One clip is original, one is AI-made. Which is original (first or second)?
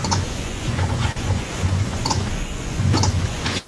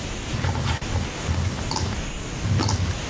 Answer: second